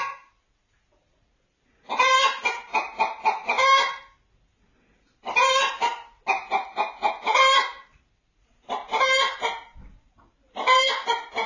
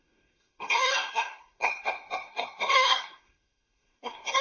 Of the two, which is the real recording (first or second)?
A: first